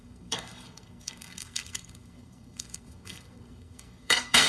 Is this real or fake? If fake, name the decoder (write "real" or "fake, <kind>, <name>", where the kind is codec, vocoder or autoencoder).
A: fake, codec, SNAC